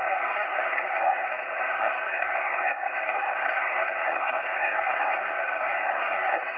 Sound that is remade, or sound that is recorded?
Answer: remade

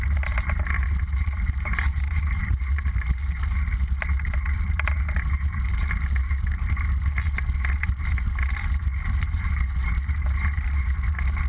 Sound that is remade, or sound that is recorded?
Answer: recorded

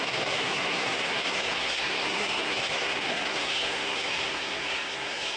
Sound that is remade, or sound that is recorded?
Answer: remade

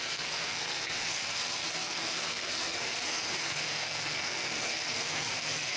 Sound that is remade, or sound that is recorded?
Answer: remade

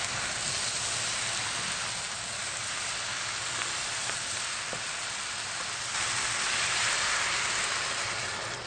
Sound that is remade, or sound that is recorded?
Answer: recorded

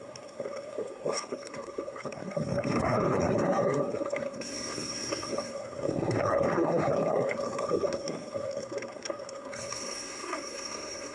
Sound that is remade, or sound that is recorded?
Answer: remade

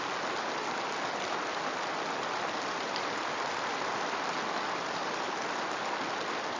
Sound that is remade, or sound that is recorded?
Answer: recorded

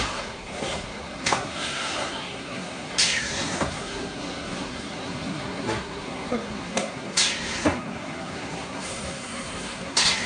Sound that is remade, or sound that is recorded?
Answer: remade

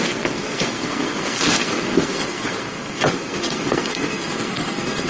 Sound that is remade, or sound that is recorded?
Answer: remade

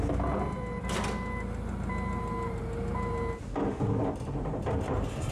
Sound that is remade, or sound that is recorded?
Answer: recorded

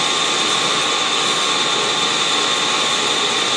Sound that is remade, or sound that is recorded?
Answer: recorded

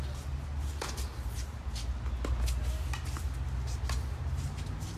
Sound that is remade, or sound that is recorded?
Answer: recorded